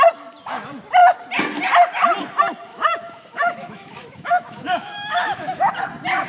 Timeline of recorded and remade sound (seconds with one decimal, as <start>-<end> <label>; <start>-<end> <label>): 0.0-2.7 recorded; 2.7-5.7 remade; 5.7-6.3 recorded